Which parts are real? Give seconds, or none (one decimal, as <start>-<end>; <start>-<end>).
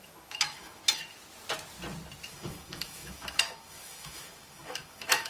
0.8-2.3